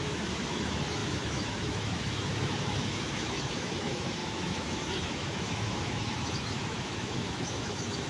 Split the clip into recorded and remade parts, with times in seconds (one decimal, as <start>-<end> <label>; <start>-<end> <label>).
0.0-8.1 remade

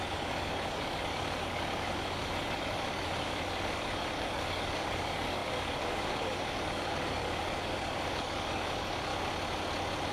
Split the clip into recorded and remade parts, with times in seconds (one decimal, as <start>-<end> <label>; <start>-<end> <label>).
0.0-9.1 remade; 9.1-10.1 recorded

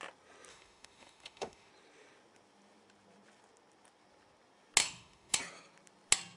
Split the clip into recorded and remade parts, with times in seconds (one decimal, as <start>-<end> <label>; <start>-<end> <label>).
0.0-0.5 recorded; 0.5-1.7 remade; 1.7-4.8 recorded; 4.8-5.4 remade; 5.4-6.4 recorded

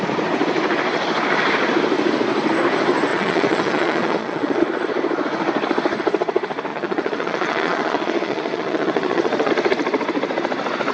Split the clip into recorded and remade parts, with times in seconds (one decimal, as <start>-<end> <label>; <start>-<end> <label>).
0.0-3.1 recorded; 3.1-4.6 remade; 4.6-6.7 recorded; 6.7-9.5 remade; 9.5-10.9 recorded

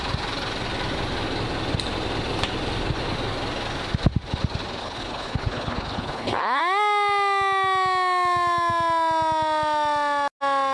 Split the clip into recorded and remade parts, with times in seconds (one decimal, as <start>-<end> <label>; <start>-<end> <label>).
0.0-4.8 recorded; 4.8-6.6 remade; 6.6-10.7 recorded

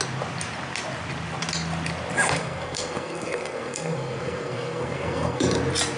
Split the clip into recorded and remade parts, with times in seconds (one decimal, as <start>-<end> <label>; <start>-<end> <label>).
0.0-2.4 recorded; 2.4-5.6 remade; 5.6-6.0 recorded

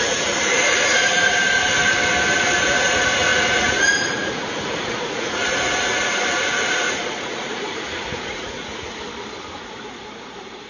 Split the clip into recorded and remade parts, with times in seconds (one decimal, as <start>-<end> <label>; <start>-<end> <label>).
0.0-1.7 remade; 1.7-2.6 recorded; 2.6-8.7 remade; 8.7-9.4 recorded; 9.4-10.7 remade

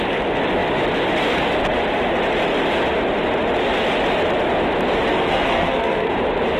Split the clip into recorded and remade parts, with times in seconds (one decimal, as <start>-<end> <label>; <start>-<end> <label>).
0.0-5.1 recorded; 5.1-6.1 remade; 6.1-6.6 recorded